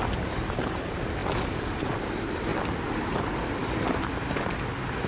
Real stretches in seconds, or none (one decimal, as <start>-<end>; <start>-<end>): 0.0-5.1